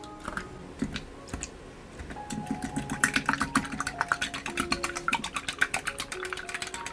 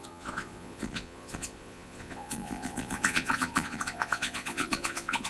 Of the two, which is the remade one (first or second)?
second